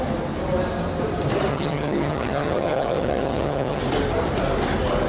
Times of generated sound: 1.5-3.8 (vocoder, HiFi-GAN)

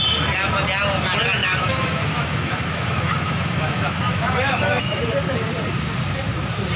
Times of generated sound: 1.4-5.0 (autoencoder, DAC-VAE)

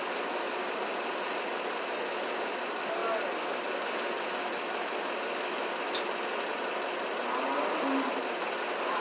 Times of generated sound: none

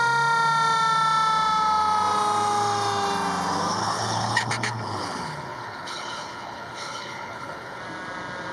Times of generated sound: 3.8-7.8 (codec, HILCodec)